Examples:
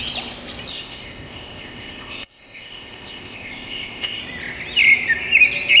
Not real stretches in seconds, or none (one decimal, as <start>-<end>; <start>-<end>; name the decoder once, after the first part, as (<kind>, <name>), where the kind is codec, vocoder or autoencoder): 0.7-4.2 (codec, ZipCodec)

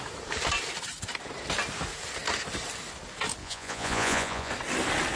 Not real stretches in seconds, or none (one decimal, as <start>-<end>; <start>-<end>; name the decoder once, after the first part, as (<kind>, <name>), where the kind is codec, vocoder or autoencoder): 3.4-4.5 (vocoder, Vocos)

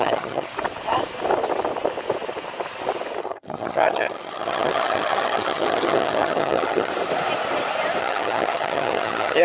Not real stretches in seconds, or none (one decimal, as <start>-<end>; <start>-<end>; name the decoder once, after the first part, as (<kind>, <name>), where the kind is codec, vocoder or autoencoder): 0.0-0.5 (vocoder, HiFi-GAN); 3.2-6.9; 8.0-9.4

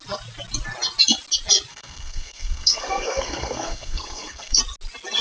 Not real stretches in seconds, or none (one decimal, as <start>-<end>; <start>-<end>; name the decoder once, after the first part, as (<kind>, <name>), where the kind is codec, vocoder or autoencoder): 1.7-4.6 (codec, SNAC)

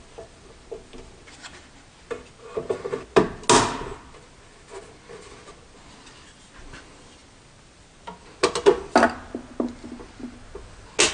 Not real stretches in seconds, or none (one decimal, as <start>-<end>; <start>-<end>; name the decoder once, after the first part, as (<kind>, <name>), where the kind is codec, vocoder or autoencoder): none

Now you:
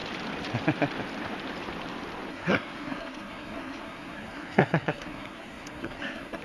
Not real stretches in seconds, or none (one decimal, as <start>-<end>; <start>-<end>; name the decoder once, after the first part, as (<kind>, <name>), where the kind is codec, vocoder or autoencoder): 2.3-6.4 (codec, SNAC)